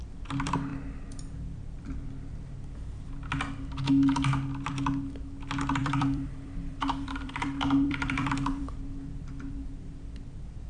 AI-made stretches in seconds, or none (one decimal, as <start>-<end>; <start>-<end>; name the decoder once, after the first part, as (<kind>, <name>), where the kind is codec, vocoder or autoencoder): 5.8-8.6 (vocoder, BigVGAN v2)